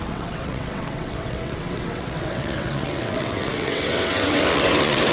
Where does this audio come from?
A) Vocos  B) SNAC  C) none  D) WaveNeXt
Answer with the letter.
D